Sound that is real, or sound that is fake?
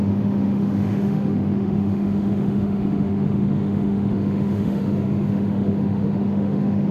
fake